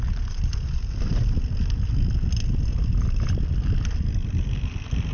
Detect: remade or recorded recorded